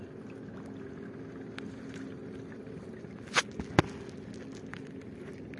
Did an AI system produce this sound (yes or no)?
no